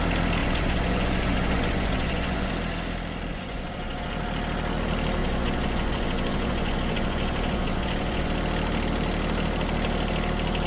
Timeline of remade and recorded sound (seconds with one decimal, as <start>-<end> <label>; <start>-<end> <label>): 0.0-0.4 recorded; 0.4-2.5 remade; 2.5-3.3 recorded; 3.3-4.1 remade; 4.1-5.2 recorded; 5.2-8.3 remade; 8.3-10.7 recorded